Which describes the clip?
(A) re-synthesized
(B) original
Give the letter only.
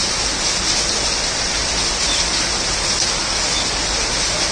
B